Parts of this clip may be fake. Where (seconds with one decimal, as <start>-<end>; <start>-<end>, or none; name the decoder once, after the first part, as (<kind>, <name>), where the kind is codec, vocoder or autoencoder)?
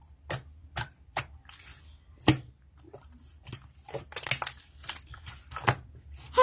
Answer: none